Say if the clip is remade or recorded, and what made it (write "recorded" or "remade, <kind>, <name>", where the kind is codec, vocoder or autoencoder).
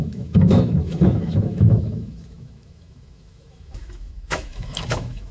remade, autoencoder, DAC-VAE